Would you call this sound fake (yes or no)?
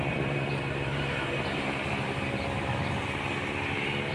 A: yes